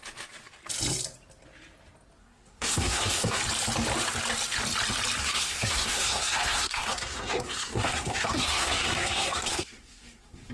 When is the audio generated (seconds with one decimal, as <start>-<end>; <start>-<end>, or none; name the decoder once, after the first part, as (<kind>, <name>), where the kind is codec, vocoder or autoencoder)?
2.2-3.4 (codec, SNAC); 5.2-10.5